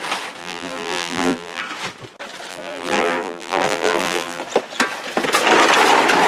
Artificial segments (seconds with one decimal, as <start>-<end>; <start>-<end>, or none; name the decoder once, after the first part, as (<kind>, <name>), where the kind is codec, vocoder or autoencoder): 0.4-1.6 (vocoder, BigVGAN v2); 2.5-4.4